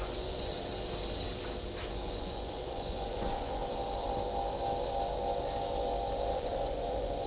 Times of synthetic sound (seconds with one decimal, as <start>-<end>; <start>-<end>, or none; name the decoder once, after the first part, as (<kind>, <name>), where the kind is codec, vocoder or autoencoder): 0.0-0.5 (vocoder, Vocos); 1.9-3.6; 6.3-7.3